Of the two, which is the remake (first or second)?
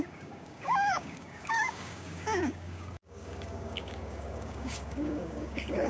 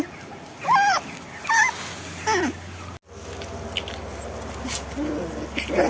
first